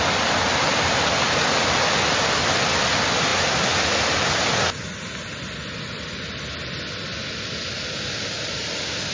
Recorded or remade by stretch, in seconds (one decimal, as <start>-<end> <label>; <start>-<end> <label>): 0.0-9.1 recorded